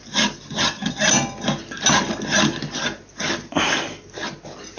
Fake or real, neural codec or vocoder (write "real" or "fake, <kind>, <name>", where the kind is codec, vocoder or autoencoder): real